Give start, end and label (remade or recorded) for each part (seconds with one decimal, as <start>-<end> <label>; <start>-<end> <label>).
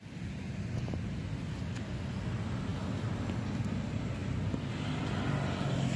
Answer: 0.0-6.0 recorded